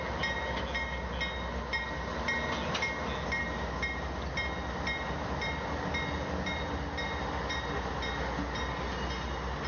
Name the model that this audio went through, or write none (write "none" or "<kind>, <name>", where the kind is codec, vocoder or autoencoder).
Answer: none